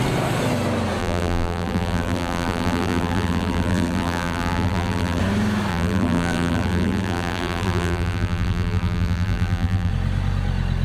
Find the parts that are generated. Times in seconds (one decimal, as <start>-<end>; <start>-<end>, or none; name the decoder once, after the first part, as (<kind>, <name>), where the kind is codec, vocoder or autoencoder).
1.0-5.2 (vocoder, BigVGAN v2); 5.7-9.9